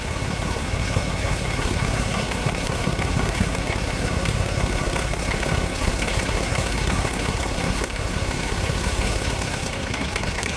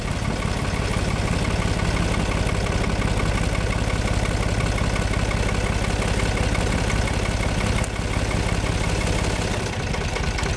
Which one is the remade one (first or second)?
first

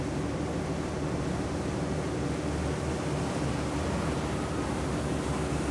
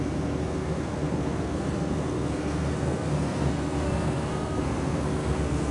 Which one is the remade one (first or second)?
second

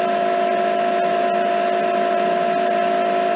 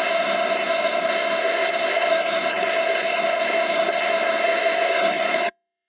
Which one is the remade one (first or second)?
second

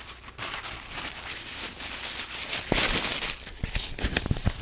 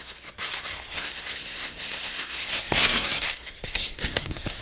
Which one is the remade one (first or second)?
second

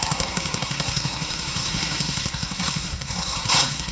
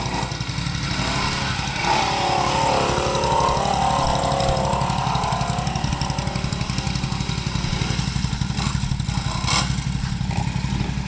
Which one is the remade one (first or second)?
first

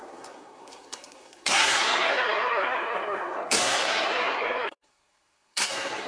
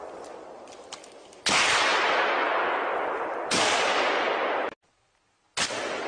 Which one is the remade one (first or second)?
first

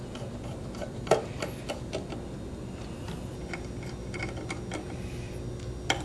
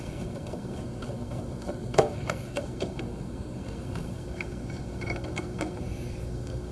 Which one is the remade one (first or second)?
second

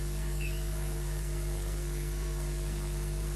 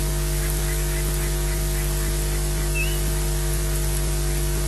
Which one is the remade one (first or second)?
first